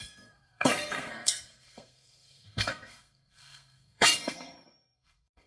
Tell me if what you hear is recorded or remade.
remade